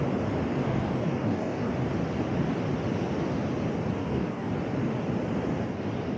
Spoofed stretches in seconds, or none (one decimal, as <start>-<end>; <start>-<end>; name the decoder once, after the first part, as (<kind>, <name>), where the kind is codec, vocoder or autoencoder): 0.6-1.7 (codec, DAC); 4.0-4.5